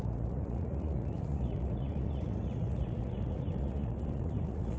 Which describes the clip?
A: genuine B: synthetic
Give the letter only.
B